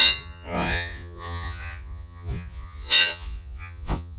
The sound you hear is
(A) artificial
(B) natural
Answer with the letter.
A